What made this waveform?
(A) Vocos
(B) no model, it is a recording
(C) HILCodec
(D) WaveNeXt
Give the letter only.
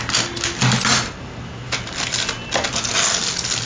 B